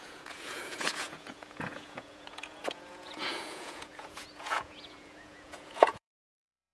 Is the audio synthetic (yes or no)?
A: yes